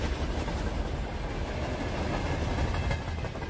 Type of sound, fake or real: real